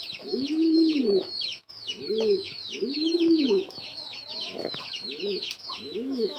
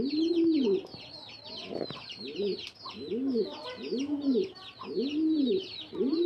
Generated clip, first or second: first